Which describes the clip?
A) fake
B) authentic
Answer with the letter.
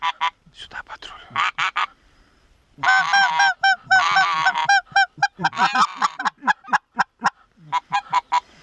B